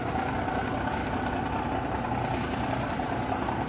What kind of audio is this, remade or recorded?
recorded